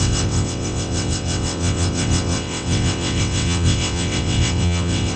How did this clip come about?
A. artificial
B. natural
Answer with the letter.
A